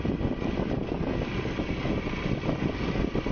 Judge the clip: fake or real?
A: real